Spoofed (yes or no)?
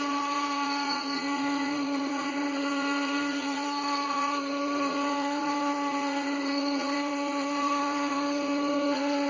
yes